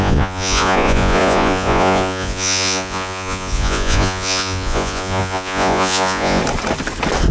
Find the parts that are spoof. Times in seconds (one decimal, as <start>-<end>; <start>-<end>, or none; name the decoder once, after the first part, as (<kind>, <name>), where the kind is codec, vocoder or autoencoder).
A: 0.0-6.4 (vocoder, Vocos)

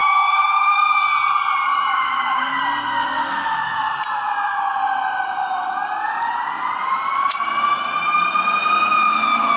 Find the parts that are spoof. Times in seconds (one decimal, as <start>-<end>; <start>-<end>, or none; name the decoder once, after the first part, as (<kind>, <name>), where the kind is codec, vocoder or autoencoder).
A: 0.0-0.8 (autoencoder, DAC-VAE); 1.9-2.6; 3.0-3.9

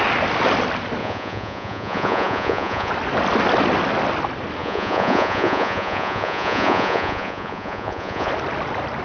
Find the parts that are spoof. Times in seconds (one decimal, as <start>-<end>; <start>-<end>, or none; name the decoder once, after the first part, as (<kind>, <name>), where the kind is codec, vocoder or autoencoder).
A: 1.0-2.9 (vocoder, Vocos); 4.6-8.3

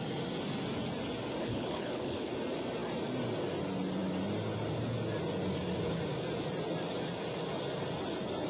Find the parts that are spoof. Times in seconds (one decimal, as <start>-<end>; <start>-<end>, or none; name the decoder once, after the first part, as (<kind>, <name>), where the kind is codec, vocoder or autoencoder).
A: 1.4-2.3 (codec, HILCodec)

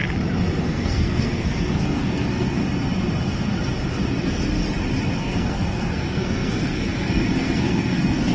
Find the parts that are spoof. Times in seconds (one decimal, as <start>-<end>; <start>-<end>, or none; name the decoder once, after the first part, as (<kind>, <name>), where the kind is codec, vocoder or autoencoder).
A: 0.6-2.6 (codec, SNAC); 5.2-8.3

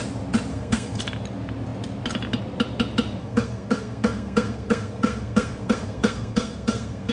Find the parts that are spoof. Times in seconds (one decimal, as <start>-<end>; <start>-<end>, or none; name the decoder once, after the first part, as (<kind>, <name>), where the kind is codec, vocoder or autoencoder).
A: 0.5-1.0 (codec, SNAC); 3.2-7.1

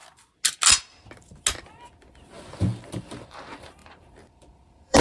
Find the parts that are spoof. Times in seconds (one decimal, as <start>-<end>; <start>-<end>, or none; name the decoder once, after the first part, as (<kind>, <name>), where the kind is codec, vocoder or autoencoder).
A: 3.0-5.0 (vocoder, BigVGAN v2)